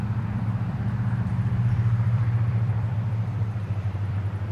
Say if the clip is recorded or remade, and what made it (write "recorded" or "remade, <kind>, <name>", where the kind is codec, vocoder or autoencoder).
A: remade, vocoder, BigVGAN v2